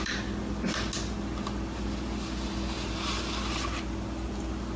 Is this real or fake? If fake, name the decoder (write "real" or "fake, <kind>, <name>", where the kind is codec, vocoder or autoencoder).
real